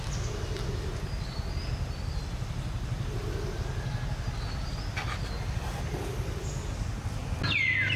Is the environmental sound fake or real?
real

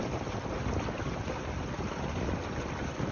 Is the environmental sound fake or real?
real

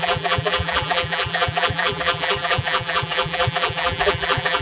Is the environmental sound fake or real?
fake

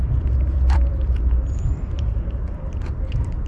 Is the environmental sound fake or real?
fake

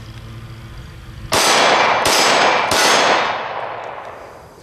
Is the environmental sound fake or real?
real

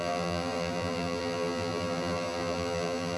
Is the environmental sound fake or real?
fake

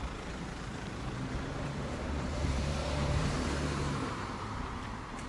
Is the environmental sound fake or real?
fake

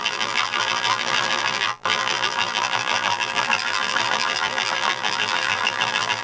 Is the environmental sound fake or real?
fake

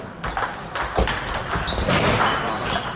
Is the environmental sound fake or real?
real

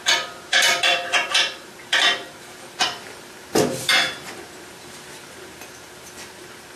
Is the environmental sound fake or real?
fake